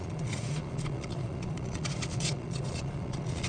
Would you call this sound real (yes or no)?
no